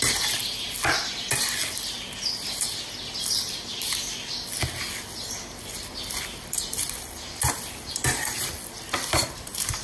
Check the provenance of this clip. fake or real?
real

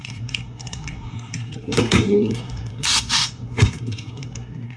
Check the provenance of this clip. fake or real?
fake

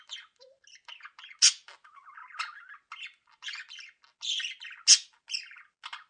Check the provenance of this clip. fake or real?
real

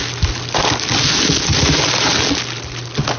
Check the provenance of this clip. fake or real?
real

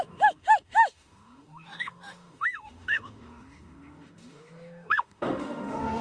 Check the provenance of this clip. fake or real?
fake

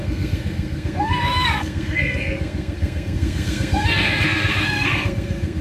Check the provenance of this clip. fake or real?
fake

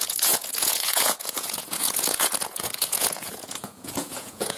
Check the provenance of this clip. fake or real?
fake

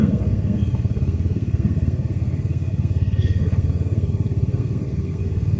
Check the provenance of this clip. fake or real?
fake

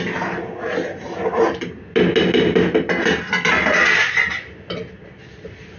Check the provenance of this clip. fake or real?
real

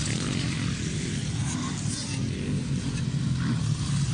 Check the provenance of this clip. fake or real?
real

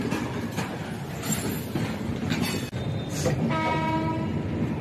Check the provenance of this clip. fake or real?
real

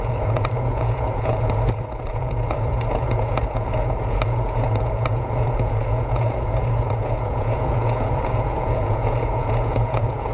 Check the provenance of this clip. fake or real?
fake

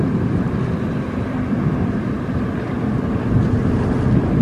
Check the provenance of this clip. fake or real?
real